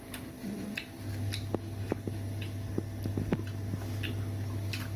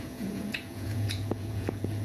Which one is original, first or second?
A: first